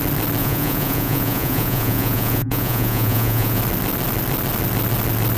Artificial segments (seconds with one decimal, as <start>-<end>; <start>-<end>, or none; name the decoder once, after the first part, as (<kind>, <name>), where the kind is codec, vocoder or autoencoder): 0.4-3.6 (vocoder, Vocos)